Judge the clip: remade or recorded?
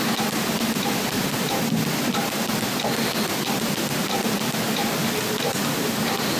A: recorded